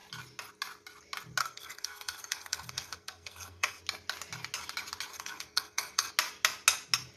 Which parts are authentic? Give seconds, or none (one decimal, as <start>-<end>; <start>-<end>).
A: 0.0-1.4; 3.8-5.1; 6.1-7.2